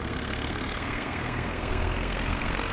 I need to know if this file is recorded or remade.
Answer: remade